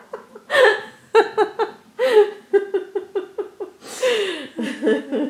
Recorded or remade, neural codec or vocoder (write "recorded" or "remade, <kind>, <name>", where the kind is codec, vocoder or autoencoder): recorded